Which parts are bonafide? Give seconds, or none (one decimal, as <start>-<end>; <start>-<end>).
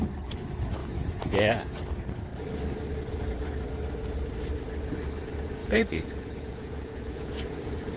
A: 0.0-0.8; 1.7-5.6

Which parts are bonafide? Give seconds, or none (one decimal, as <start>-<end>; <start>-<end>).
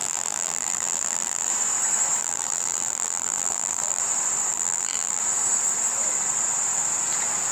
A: 1.5-2.2; 4.0-4.5; 5.2-7.5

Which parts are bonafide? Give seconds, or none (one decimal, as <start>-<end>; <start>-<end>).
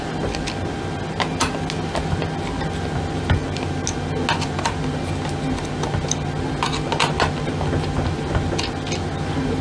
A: 0.0-9.6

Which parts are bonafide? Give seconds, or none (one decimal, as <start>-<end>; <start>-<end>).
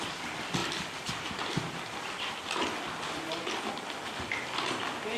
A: 0.0-5.2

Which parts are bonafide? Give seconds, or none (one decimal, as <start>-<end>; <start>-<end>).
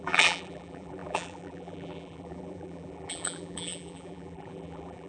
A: none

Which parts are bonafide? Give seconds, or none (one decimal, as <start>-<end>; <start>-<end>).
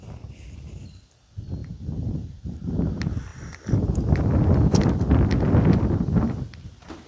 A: 0.0-1.6; 2.9-3.3; 6.4-7.1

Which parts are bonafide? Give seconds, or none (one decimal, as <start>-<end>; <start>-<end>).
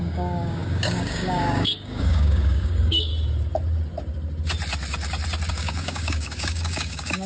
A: 3.1-5.5